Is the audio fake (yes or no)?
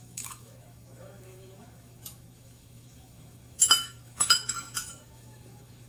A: yes